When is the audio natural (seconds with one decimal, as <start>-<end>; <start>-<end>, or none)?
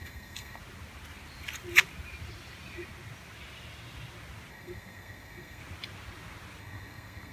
0.6-4.5; 5.6-6.6